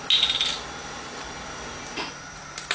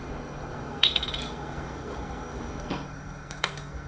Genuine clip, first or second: first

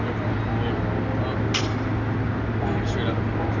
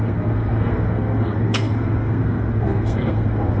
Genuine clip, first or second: first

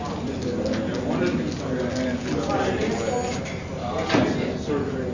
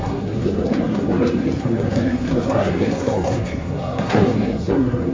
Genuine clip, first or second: first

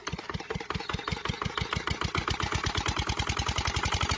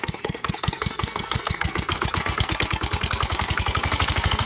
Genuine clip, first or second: first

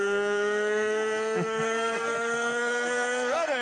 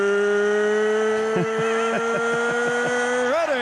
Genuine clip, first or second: second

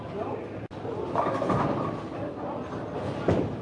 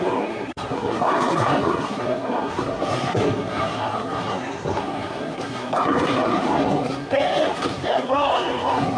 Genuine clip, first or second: first